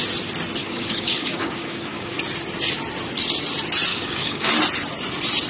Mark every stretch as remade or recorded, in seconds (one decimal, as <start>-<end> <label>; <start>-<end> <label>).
0.0-0.6 recorded; 0.6-2.2 remade; 2.2-3.9 recorded; 3.9-4.5 remade; 4.5-5.5 recorded